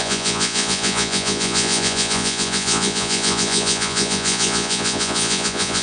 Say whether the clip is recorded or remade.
remade